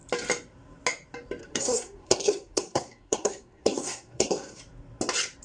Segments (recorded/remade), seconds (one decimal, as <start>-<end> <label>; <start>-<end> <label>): 0.0-1.4 recorded; 1.4-4.6 remade; 4.6-5.4 recorded